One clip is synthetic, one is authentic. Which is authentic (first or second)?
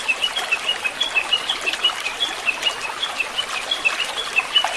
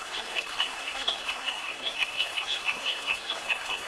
first